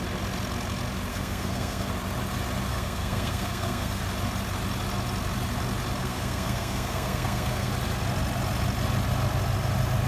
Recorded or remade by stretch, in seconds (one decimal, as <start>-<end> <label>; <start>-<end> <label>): 0.0-1.1 recorded; 1.1-1.9 remade; 1.9-2.7 recorded; 2.7-4.0 remade; 4.0-6.0 recorded; 6.0-7.7 remade; 7.7-10.1 recorded